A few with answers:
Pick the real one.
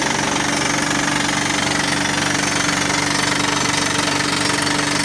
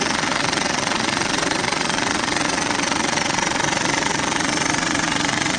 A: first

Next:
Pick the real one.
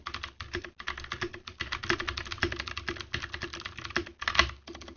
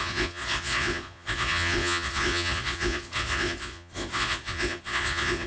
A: first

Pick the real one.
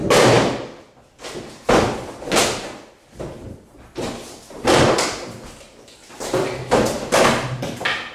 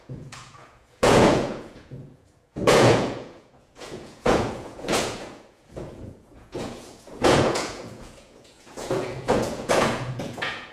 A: first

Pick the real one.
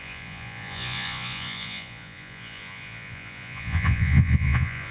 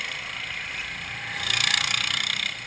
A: second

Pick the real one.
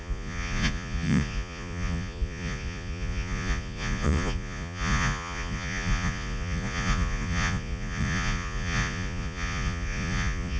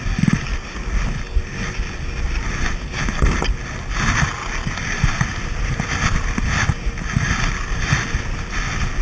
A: second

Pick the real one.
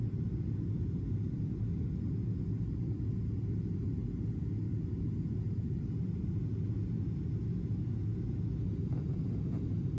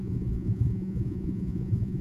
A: first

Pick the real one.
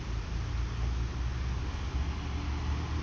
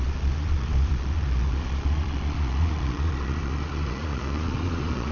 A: first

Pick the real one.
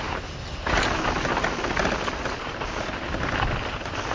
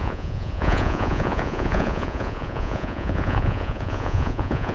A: first